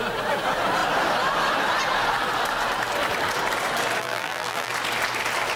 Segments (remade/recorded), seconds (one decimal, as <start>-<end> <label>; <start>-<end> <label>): 0.0-4.0 recorded; 4.0-4.7 remade; 4.7-5.6 recorded